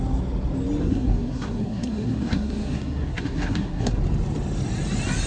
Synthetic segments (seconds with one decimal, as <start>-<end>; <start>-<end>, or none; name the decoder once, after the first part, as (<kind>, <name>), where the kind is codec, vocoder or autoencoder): 0.8-4.0 (codec, SNAC)

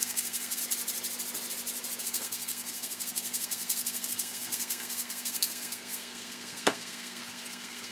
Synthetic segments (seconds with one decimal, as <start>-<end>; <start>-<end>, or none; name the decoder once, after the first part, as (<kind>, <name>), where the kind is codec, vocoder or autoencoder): 0.0-0.6 (codec, SNAC); 2.0-7.9

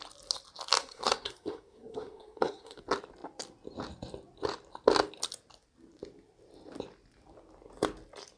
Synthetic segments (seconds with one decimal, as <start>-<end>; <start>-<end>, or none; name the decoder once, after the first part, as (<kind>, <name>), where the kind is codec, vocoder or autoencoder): 0.8-2.8 (codec, SNAC)

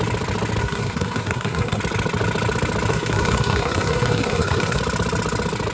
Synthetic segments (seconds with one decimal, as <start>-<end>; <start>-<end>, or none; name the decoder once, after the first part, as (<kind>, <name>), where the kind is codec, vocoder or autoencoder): 0.6-1.8 (codec, SNAC); 2.9-4.8

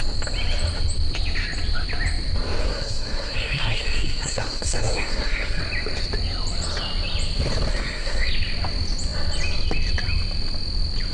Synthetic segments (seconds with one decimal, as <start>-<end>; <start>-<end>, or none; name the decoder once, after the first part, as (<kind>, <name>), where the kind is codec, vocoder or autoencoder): 2.6-5.6 (codec, SNAC); 7.7-8.3

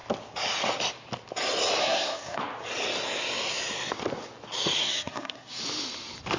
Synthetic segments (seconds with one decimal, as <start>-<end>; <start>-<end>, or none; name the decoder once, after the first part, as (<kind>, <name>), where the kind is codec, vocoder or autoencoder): 1.8-2.4 (codec, SNAC); 4.8-5.6